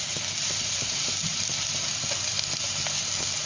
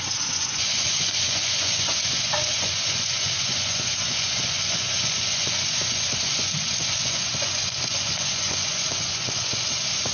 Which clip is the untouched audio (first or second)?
first